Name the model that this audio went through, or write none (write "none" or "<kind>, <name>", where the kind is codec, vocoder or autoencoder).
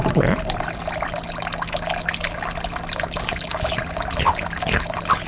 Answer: none